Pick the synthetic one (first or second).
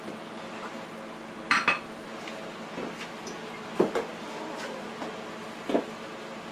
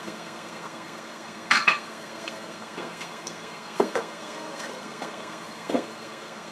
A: second